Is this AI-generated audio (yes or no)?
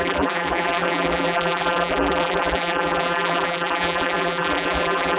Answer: yes